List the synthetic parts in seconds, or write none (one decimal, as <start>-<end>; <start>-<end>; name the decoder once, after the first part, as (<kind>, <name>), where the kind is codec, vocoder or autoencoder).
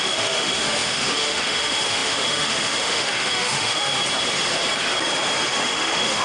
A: 0.0-4.0 (autoencoder, DAC-VAE); 5.5-6.2